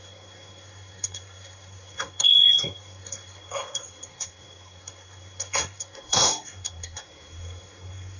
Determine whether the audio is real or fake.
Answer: fake